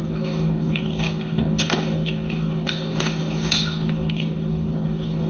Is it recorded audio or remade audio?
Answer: remade